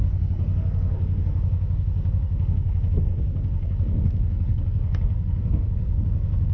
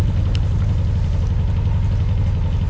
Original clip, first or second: second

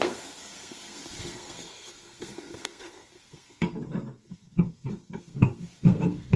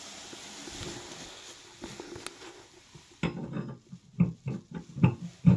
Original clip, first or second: second